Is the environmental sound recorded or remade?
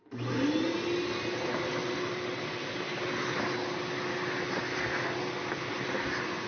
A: recorded